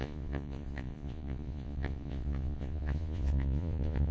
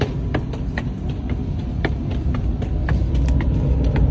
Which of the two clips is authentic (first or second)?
second